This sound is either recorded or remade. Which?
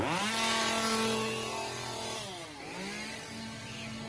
recorded